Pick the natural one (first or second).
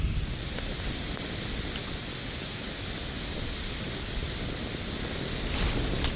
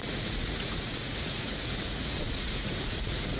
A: first